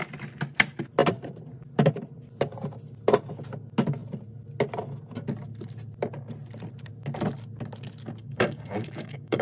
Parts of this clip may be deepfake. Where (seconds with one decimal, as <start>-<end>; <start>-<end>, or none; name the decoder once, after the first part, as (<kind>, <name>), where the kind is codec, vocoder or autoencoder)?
8.2-9.4 (codec, DAC)